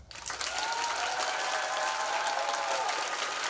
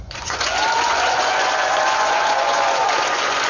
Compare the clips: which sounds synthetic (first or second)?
second